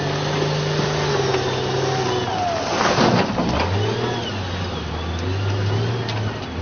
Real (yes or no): yes